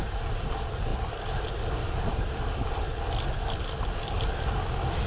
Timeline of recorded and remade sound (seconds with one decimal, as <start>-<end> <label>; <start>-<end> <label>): 0.0-5.1 recorded